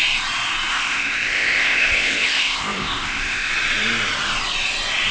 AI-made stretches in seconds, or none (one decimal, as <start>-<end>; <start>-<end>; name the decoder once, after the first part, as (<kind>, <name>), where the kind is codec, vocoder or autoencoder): 0.7-3.5 (codec, ZipCodec)